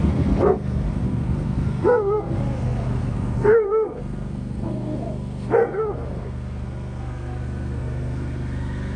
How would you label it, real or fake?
fake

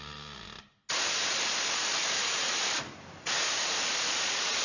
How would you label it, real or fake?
real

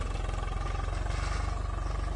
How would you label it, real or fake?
real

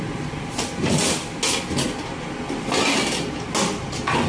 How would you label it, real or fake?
real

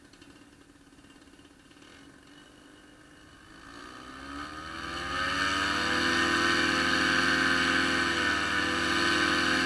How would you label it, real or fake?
real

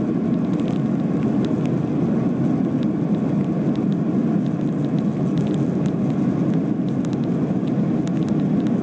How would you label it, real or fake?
real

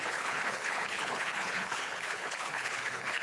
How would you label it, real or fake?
fake